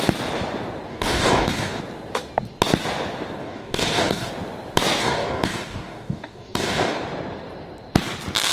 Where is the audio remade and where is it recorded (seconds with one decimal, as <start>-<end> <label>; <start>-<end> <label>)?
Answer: 0.0-0.9 recorded; 0.9-1.8 remade; 1.8-3.4 recorded; 3.4-4.3 remade; 4.3-5.0 recorded; 5.0-7.0 remade; 7.0-8.5 recorded